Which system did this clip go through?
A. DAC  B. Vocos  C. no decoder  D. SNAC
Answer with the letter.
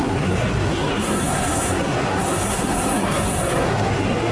D